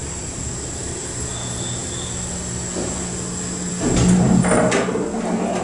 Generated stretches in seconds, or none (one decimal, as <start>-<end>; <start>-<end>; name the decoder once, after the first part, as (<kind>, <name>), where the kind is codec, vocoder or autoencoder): 0.0-1.0 (vocoder, BigVGAN v2)

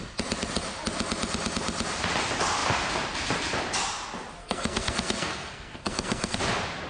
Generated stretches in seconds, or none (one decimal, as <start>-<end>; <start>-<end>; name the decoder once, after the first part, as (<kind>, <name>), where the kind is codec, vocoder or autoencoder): 4.4-6.4 (codec, SNAC)

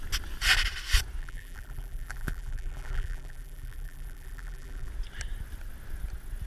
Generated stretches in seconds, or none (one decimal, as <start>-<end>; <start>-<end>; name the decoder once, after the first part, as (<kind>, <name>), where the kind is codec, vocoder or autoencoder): 1.2-4.9 (vocoder, BigVGAN v2)

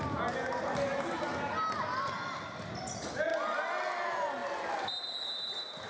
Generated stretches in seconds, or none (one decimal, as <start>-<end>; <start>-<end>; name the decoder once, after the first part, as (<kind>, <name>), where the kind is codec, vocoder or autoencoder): none

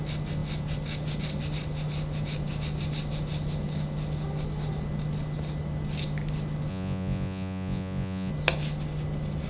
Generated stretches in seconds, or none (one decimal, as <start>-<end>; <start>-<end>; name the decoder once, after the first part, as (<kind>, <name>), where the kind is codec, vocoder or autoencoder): 6.7-8.3 (vocoder, Vocos)

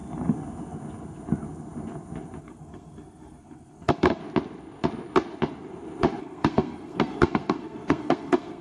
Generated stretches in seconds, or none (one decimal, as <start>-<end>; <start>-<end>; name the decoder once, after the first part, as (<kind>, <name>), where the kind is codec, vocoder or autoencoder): 2.4-4.2 (codec, SNAC); 6.2-8.6

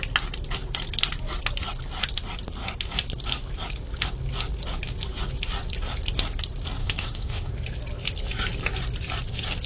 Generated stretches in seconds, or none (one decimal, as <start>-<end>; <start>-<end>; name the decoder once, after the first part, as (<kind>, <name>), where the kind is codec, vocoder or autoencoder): 6.8-7.5 (autoencoder, DAC-VAE)

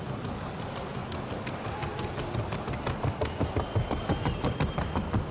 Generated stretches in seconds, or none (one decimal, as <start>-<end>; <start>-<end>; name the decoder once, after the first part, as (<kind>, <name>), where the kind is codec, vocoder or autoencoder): none